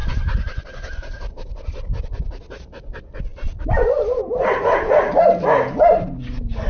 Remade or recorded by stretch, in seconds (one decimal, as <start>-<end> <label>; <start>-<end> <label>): 0.0-6.7 recorded